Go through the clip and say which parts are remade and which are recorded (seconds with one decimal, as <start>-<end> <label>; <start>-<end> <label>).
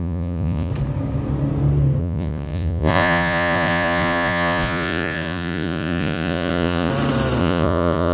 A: 0.0-0.7 remade; 0.7-2.0 recorded; 2.0-6.9 remade; 6.9-7.4 recorded; 7.4-8.1 remade